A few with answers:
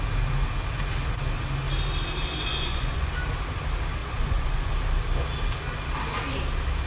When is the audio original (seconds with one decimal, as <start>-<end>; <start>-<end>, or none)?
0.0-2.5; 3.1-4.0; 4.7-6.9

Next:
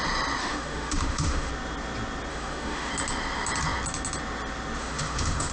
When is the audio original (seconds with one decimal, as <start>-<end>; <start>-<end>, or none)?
0.0-0.4; 1.5-2.3; 2.9-4.8

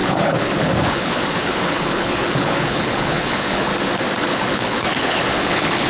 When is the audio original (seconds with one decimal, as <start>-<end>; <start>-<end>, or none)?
3.7-4.3

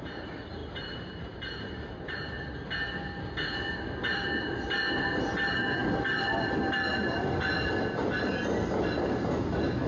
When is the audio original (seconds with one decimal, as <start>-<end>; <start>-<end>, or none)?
0.0-0.6; 2.5-9.9